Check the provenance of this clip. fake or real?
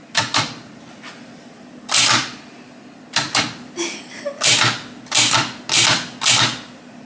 real